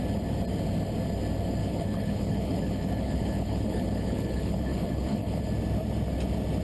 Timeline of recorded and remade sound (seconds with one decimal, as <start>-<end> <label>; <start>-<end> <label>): 0.0-1.6 recorded; 1.6-5.4 remade; 5.4-6.6 recorded